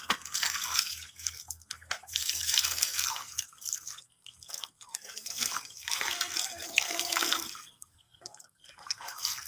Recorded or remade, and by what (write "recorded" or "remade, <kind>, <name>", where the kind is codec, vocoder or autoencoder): remade, codec, SNAC